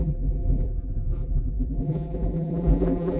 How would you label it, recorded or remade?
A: remade